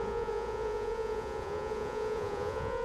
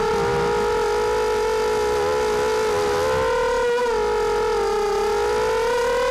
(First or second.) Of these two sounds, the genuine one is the second